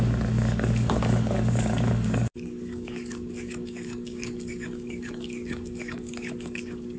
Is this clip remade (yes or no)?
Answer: yes